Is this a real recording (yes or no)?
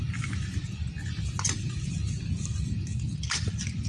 yes